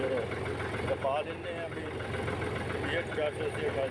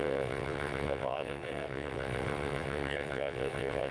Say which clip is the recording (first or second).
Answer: first